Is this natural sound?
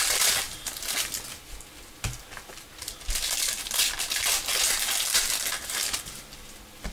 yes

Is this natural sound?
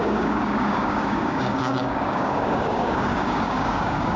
no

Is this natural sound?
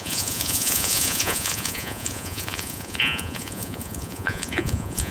no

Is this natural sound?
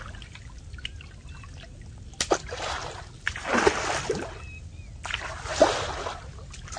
yes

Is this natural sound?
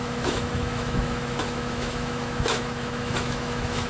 no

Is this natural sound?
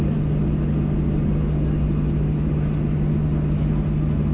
yes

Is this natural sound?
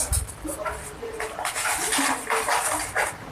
yes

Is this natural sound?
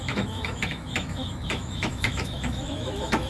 no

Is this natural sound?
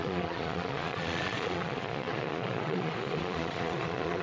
no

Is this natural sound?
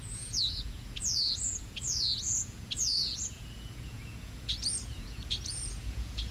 no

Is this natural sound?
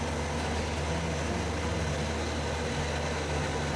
yes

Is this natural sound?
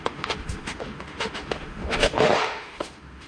no